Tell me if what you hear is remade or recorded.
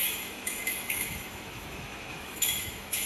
remade